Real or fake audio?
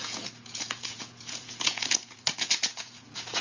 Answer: fake